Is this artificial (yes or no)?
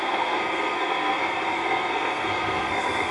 yes